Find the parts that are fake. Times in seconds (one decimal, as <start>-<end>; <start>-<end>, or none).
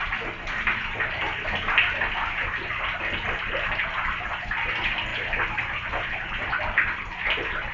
none